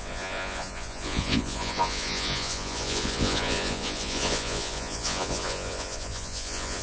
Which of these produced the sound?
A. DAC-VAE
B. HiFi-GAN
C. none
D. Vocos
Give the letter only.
D